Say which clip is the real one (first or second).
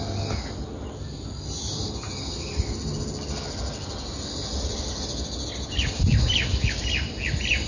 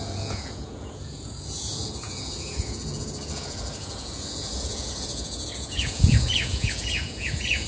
first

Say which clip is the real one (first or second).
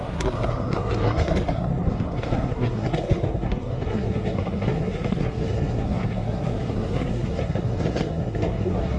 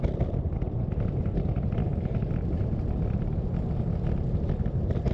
second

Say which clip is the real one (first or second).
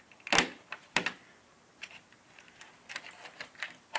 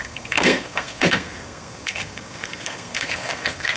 first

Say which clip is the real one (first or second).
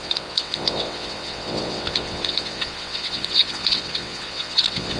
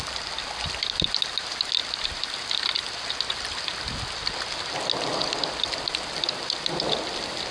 second